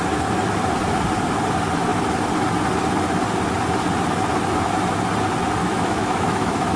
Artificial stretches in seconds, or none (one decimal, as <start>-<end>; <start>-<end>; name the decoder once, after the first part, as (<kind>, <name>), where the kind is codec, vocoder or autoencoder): 5.6-6.8 (autoencoder, DAC-VAE)

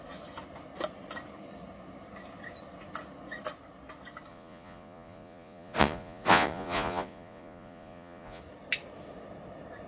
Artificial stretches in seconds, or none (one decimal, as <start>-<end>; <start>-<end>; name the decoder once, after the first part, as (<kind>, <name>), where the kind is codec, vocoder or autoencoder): 4.3-8.4 (vocoder, Vocos)

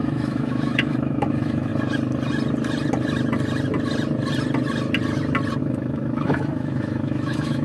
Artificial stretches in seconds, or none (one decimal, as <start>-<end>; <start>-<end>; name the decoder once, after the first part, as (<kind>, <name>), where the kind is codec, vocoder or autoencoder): 0.0-1.7 (autoencoder, DAC-VAE); 5.6-7.6

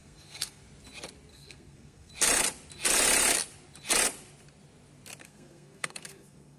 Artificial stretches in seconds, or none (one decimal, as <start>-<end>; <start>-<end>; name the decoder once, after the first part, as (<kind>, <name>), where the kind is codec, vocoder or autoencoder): 0.0-0.6 (codec, SNAC); 1.3-2.1; 5.2-6.6

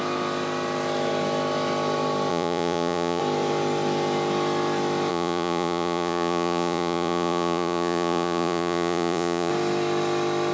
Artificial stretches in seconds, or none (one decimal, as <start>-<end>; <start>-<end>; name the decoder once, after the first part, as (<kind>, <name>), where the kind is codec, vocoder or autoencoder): 2.3-3.2 (vocoder, Vocos); 5.1-9.5

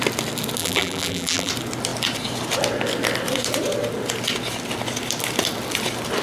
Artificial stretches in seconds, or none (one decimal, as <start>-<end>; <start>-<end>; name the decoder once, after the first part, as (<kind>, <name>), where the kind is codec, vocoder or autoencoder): 0.6-1.5 (vocoder, BigVGAN v2)

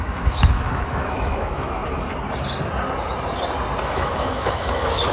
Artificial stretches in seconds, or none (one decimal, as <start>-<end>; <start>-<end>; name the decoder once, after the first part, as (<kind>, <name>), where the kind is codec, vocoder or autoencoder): 0.0-1.8 (autoencoder, DAC-VAE); 3.8-5.1